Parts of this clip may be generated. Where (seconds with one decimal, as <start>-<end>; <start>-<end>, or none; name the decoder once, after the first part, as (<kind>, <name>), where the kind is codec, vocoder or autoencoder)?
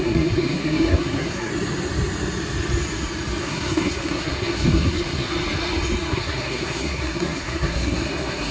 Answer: 0.0-1.5 (codec, SNAC); 3.4-5.3; 6.1-8.5